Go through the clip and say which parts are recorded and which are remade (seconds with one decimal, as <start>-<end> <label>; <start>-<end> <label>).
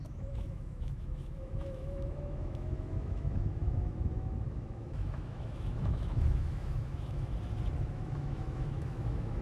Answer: 0.0-7.3 remade; 7.3-7.9 recorded; 7.9-9.4 remade